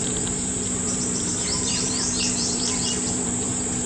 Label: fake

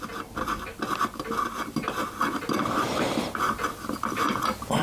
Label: real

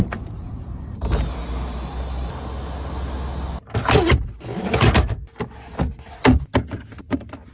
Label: real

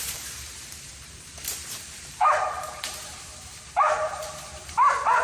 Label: fake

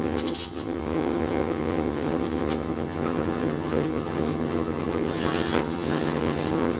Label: fake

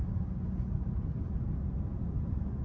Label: real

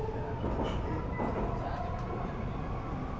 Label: real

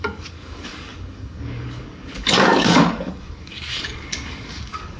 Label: fake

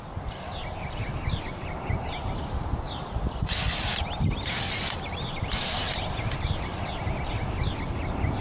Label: real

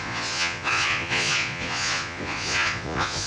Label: fake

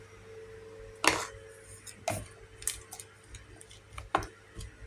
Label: real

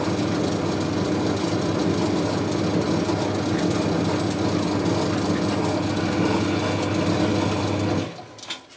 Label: real